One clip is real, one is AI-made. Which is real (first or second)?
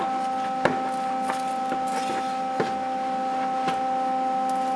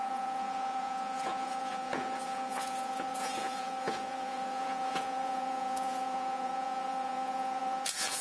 first